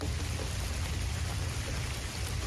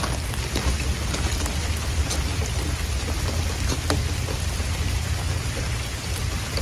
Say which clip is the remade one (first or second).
first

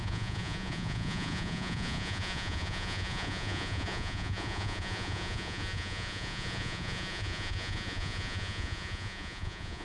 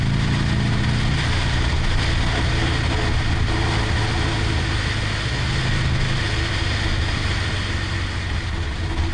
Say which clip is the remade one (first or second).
first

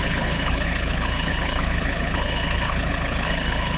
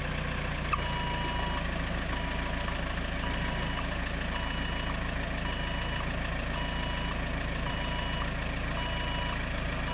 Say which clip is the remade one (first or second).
first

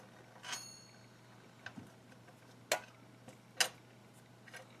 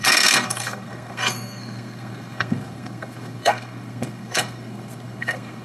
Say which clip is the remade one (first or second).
second